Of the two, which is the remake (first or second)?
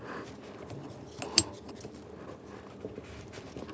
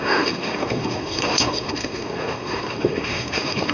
second